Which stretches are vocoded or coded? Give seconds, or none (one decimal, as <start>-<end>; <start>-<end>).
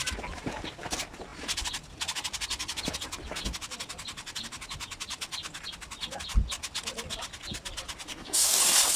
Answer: 8.1-8.6